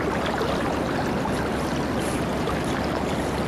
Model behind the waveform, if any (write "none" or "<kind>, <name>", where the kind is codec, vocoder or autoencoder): none